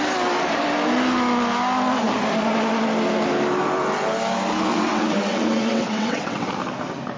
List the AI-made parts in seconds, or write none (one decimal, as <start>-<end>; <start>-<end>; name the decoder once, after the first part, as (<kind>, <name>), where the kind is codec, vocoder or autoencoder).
4.7-6.5 (vocoder, WaveNeXt)